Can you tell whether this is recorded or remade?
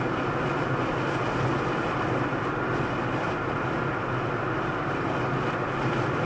recorded